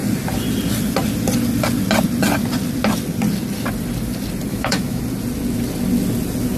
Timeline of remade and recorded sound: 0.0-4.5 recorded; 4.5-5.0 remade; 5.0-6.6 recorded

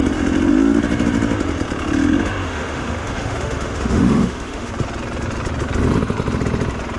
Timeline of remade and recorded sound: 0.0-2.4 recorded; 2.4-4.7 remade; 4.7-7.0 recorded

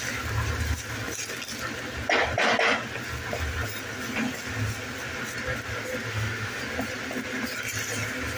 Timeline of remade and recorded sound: 0.0-6.1 recorded; 6.1-6.6 remade; 6.6-8.4 recorded

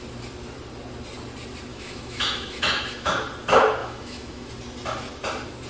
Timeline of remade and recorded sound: 0.0-1.7 recorded; 1.7-3.1 remade; 3.1-3.8 recorded; 3.8-4.5 remade; 4.5-5.7 recorded

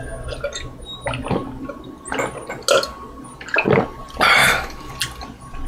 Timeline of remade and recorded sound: 0.0-4.4 recorded; 4.4-4.9 remade; 4.9-5.7 recorded

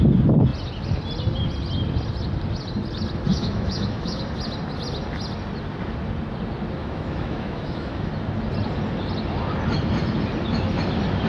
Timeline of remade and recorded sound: 0.0-3.3 recorded; 3.3-4.2 remade; 4.2-6.8 recorded; 6.8-8.1 remade; 8.1-11.3 recorded

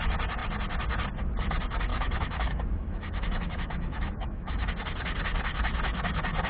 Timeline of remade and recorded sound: 0.0-1.9 recorded; 1.9-4.7 remade; 4.7-6.5 recorded

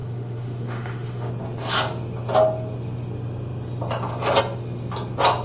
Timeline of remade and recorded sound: 0.0-1.3 remade; 1.3-5.4 recorded